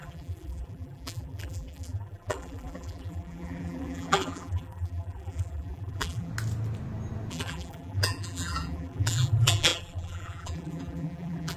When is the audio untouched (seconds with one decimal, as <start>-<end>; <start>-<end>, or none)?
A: 6.3-7.3